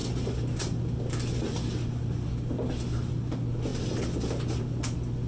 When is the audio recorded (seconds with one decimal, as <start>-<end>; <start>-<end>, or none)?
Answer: 0.0-5.3